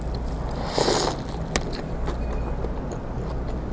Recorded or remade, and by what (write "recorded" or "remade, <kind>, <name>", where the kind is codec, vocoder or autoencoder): recorded